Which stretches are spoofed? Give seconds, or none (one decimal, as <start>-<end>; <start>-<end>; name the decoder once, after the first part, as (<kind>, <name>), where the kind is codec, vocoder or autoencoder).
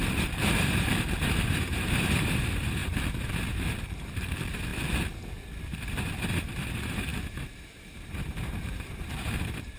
0.0-4.7 (vocoder, BigVGAN v2); 5.6-9.8